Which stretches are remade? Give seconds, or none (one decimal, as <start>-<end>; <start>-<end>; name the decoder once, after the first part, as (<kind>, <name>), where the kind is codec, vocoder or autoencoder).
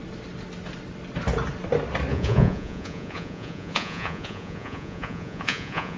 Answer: 2.1-6.0 (vocoder, Vocos)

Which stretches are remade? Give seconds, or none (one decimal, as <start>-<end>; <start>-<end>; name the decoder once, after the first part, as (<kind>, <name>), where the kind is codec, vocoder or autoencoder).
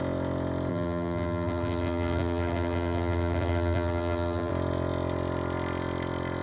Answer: 0.7-4.5 (vocoder, BigVGAN v2)